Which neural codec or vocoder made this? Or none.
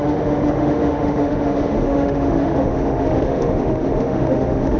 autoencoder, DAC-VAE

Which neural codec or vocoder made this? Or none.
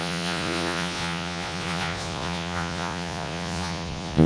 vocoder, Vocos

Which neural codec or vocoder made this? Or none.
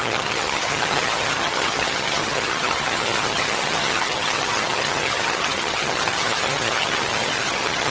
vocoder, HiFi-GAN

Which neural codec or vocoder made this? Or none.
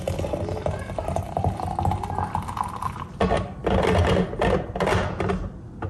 none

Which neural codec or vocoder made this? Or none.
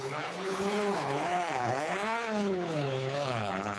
codec, HILCodec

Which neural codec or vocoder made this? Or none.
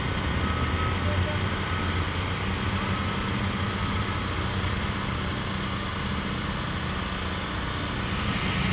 none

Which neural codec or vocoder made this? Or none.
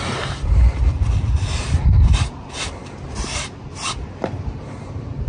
none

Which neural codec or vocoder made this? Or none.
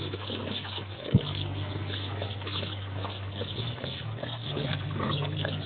codec, SNAC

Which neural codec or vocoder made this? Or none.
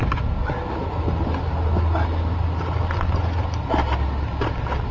none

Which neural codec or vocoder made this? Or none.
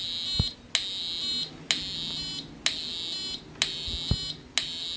none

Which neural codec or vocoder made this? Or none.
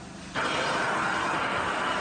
none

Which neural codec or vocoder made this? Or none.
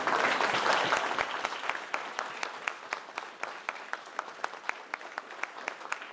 none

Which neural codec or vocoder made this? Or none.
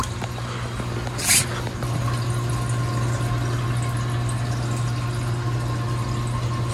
none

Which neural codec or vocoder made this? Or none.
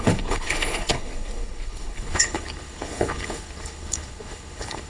codec, HILCodec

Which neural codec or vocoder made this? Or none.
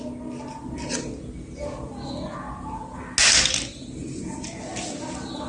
none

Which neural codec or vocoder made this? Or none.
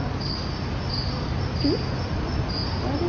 none